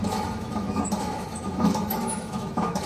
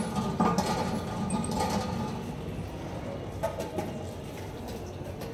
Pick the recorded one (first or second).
second